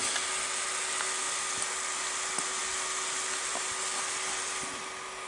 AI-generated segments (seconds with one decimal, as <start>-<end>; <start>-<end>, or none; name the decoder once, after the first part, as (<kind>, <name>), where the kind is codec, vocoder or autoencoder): none